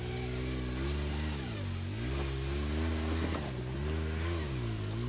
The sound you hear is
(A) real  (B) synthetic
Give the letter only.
A